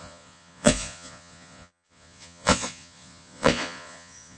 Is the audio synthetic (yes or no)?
yes